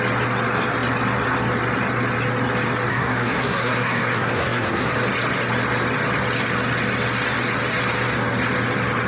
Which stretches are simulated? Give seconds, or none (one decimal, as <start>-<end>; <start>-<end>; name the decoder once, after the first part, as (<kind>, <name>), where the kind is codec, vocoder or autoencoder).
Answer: 2.9-4.9 (codec, SNAC)